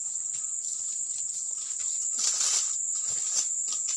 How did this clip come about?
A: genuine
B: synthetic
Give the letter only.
A